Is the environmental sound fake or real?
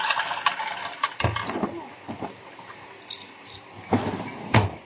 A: real